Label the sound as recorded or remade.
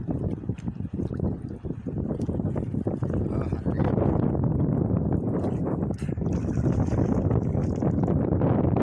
recorded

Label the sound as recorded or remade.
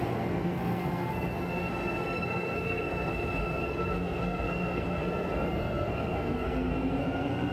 remade